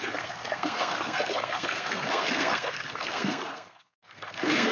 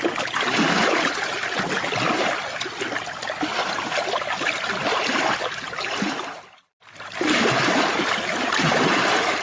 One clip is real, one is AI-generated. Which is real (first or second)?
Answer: second